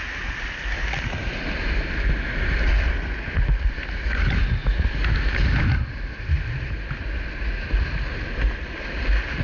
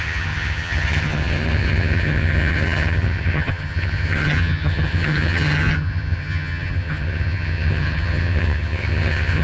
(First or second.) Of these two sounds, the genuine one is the first